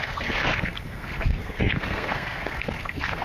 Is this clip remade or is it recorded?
remade